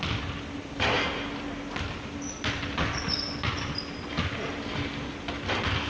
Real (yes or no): yes